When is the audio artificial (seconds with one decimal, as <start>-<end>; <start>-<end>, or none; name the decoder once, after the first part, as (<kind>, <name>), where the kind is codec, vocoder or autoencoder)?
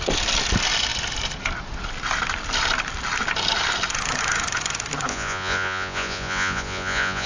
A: 5.1-7.3 (vocoder, Vocos)